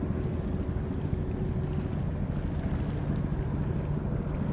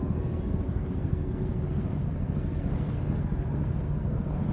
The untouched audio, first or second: first